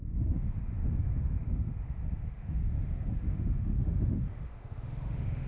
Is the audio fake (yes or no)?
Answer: yes